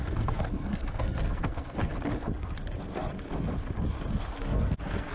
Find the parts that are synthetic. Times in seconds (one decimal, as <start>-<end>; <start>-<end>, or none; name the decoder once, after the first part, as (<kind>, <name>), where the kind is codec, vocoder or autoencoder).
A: 0.0-1.9 (codec, SNAC); 4.4-5.1